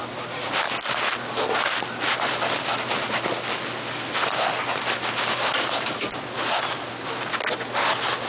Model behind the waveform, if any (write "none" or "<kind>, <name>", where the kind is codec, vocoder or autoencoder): none